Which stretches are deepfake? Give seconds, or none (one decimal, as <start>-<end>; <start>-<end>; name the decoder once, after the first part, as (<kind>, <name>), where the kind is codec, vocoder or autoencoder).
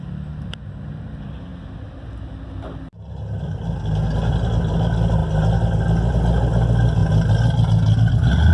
none